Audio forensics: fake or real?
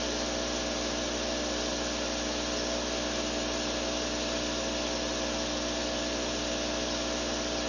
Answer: real